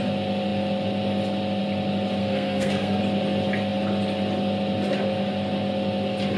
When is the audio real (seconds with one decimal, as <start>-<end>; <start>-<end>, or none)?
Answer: 0.0-2.2; 3.0-6.4